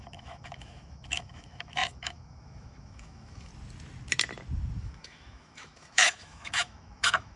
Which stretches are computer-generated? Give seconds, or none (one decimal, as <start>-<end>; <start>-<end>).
0.0-3.5; 4.8-7.4